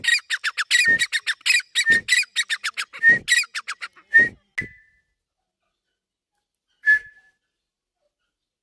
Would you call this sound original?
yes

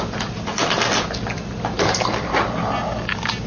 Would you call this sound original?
yes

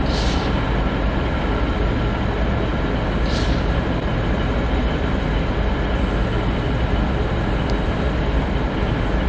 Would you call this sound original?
yes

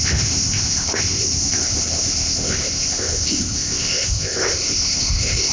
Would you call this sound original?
no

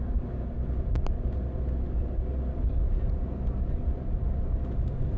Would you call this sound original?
yes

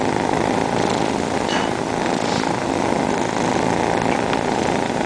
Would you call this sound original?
yes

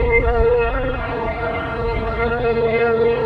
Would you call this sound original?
no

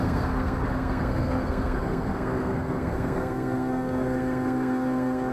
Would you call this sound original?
no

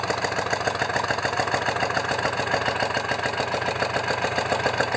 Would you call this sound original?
yes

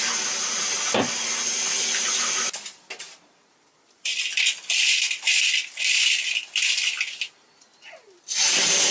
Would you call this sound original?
yes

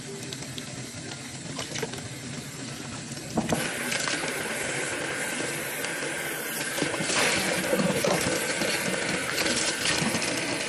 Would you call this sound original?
no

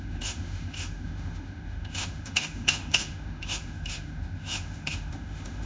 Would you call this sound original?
no